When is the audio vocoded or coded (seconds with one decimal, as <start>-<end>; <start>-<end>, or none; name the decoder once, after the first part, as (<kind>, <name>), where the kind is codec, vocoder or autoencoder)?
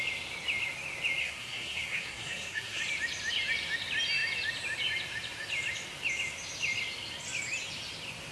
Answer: 1.2-2.8 (codec, SNAC)